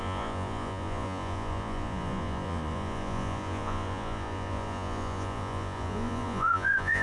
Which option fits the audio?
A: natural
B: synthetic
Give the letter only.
B